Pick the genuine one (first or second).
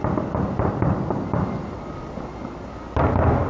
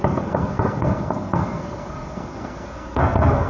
first